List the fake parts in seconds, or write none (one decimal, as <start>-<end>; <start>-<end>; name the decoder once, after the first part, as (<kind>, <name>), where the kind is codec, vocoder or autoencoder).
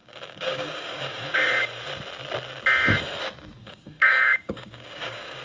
0.0-1.6 (codec, DAC); 3.6-5.4